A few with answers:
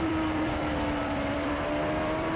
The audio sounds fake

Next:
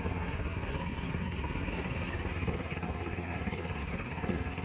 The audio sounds fake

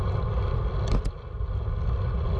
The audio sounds real